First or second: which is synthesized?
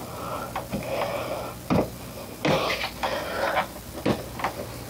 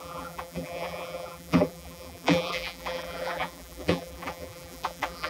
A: second